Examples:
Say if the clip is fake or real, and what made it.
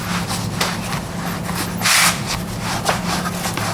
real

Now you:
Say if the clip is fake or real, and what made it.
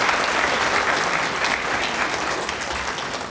real